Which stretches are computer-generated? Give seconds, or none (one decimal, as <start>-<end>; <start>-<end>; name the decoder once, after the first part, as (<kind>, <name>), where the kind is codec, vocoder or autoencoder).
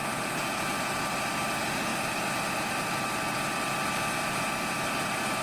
0.0-1.4 (vocoder, BigVGAN v2)